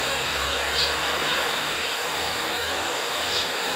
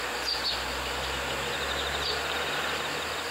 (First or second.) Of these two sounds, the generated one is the first